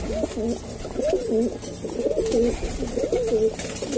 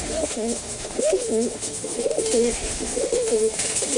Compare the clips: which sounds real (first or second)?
first